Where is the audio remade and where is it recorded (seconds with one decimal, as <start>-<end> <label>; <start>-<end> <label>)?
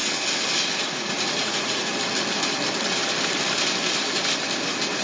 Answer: 0.0-0.7 recorded; 0.7-1.9 remade; 1.9-5.0 recorded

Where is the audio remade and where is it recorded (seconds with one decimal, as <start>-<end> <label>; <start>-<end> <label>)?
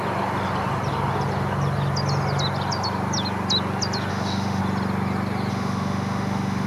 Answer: 0.0-4.1 recorded; 4.1-4.6 remade; 4.6-5.5 recorded; 5.5-6.7 remade